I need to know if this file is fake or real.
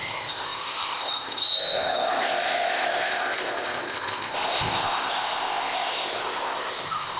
fake